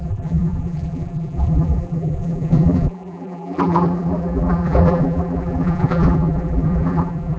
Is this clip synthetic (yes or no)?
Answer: yes